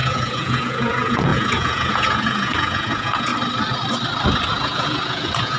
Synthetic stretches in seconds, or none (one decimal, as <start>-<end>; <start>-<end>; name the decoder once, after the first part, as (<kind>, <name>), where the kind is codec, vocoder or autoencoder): 0.0-3.3 (vocoder, Vocos); 4.5-5.6